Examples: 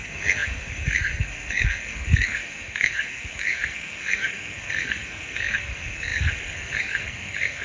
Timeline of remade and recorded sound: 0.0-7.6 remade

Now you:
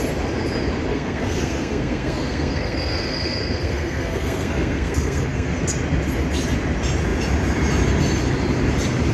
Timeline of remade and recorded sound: 0.0-0.9 recorded; 0.9-5.6 remade; 5.6-9.1 recorded